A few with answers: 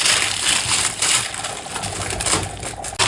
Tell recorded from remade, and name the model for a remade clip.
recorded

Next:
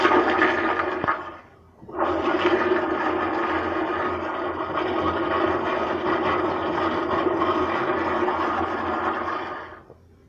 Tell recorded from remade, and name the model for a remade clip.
recorded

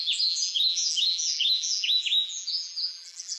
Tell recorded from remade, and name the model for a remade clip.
remade, vocoder, BigVGAN v2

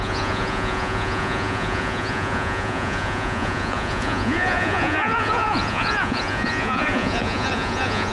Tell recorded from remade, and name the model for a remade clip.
remade, vocoder, Vocos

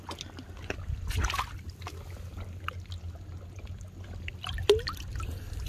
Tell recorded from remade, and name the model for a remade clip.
recorded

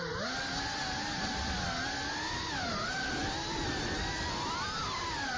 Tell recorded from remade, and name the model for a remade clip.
recorded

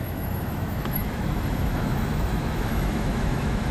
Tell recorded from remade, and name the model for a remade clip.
remade, autoencoder, DAC-VAE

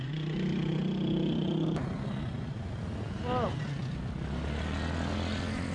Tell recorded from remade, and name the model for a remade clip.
recorded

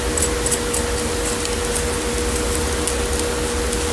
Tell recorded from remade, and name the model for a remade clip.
recorded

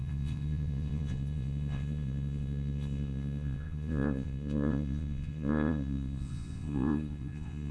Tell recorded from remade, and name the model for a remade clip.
remade, vocoder, Vocos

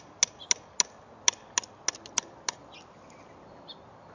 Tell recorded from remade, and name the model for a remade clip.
recorded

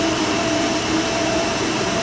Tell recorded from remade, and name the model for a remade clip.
remade, vocoder, BigVGAN v2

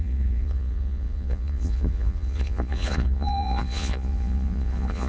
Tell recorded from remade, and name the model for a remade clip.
remade, vocoder, Vocos